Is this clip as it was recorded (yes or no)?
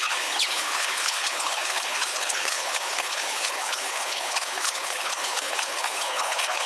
no